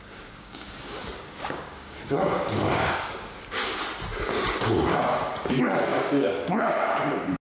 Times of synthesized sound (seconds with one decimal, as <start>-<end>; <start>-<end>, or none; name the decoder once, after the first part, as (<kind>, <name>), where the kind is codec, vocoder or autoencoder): 0.0-3.6 (codec, DAC); 4.6-7.4